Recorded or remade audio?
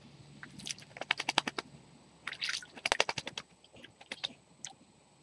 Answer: recorded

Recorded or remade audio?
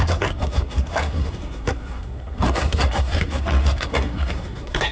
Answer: remade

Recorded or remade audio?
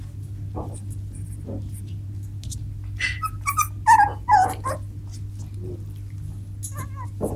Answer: recorded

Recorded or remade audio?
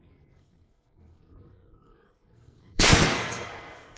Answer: remade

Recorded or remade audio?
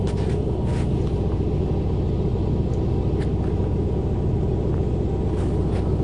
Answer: recorded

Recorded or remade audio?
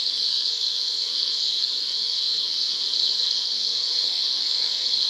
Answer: remade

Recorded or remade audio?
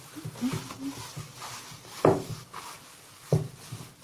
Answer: recorded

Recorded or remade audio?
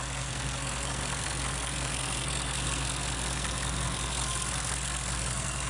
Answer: remade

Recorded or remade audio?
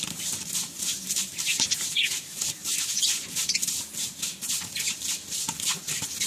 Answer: recorded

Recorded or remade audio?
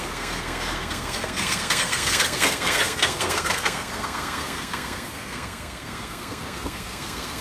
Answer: remade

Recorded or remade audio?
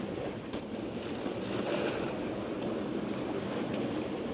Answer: recorded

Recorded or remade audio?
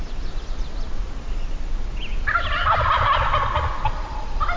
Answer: recorded